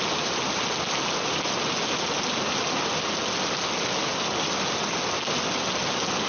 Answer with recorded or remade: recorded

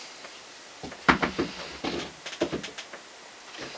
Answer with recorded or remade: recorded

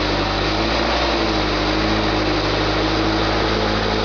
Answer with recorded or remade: recorded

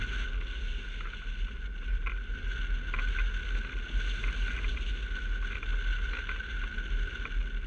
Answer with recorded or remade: recorded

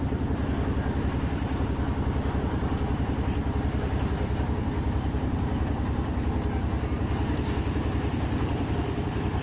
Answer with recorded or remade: remade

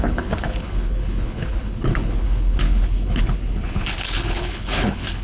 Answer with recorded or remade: remade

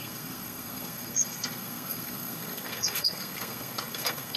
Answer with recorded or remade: remade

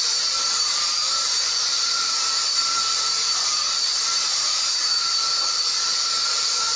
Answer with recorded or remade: remade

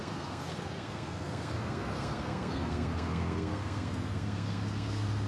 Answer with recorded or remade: remade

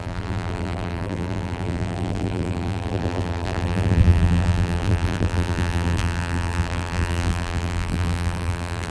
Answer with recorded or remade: remade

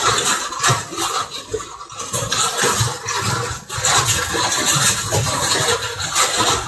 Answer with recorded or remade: recorded